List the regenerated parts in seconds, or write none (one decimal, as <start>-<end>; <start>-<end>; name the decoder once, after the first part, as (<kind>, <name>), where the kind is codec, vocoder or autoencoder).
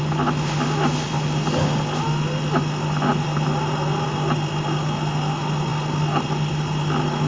none